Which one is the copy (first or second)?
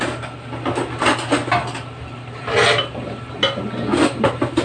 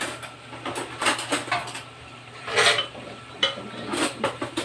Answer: second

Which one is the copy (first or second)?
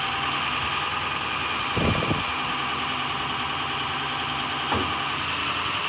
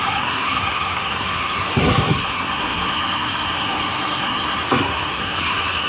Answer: second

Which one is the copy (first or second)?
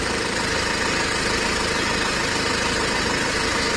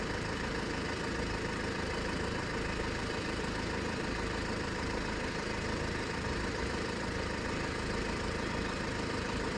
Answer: second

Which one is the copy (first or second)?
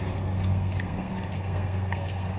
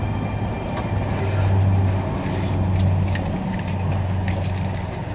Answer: first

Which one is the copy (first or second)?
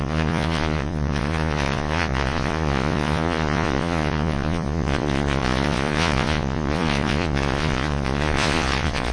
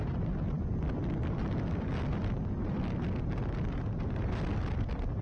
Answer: first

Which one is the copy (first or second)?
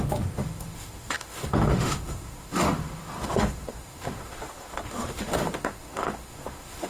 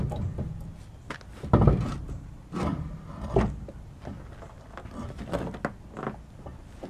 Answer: first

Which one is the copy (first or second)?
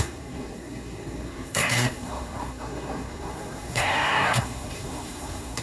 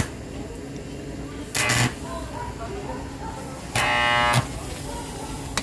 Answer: first